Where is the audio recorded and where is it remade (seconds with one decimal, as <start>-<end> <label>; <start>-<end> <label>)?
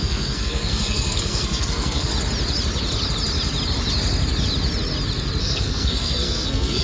0.0-2.1 remade; 2.1-5.4 recorded; 5.4-6.8 remade